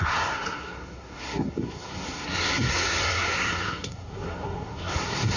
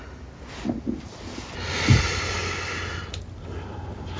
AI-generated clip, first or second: first